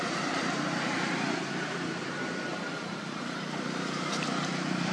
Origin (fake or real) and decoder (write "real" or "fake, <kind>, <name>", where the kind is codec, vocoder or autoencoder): fake, vocoder, BigVGAN v2